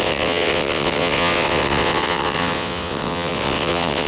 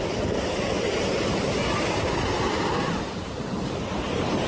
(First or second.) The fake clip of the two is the first